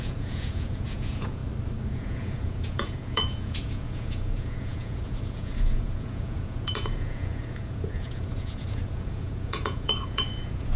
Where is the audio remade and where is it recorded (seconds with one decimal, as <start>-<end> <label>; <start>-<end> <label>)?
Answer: 0.0-1.4 remade; 1.4-1.9 recorded; 1.9-10.8 remade